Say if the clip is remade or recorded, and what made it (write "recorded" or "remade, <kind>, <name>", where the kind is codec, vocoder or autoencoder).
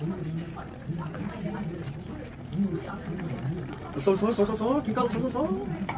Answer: recorded